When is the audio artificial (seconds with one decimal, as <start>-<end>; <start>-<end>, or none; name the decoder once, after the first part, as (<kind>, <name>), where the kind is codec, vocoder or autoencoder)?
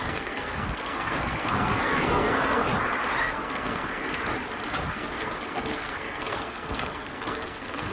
0.0-2.6 (codec, SNAC); 3.2-4.2; 4.9-7.9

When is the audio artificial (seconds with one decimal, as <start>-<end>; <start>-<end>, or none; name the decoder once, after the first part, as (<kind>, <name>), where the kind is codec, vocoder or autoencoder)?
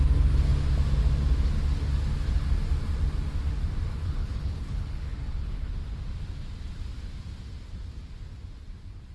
3.9-5.7 (codec, HILCodec)